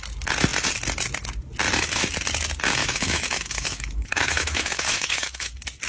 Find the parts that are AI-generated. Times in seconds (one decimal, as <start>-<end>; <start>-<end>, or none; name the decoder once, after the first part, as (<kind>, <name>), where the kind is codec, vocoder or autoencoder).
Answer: 2.8-5.5 (autoencoder, DAC-VAE)